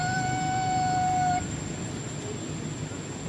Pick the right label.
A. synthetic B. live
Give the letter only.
B